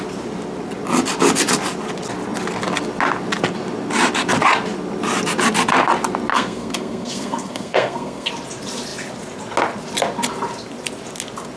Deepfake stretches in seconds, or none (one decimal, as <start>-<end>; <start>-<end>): 6.3-8.3